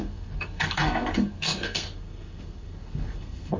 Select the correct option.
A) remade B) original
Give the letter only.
A